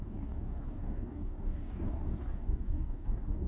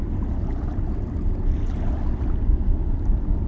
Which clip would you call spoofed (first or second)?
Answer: first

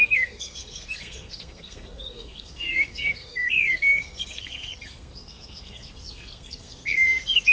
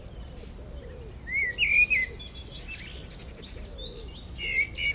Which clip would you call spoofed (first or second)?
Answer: first